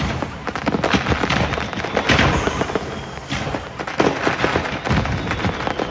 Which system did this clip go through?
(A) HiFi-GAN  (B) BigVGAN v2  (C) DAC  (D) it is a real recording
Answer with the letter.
D